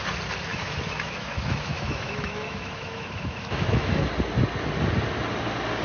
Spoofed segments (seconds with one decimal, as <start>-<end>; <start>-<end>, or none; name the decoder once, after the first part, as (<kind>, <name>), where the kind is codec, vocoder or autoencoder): 0.5-4.0 (autoencoder, DAC-VAE)